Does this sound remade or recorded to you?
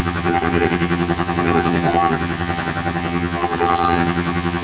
remade